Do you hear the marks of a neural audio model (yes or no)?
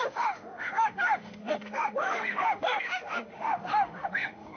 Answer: yes